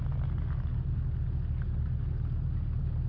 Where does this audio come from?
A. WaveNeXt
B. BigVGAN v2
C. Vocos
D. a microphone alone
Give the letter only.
D